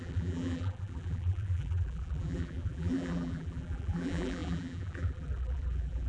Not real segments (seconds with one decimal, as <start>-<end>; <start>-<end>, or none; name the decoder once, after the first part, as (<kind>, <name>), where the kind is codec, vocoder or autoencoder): 0.0-6.1 (vocoder, BigVGAN v2)